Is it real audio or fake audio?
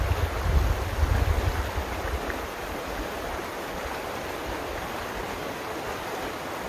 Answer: real